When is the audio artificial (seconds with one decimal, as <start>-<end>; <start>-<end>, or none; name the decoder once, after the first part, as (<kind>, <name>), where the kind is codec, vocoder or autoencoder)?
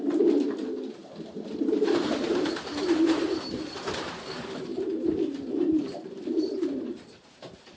0.0-1.0 (vocoder, BigVGAN v2); 1.6-4.7; 5.5-7.8